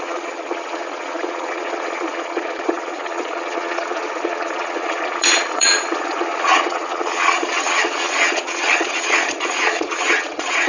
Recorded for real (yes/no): no